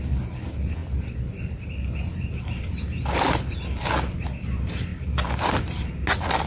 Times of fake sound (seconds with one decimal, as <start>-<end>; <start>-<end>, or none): none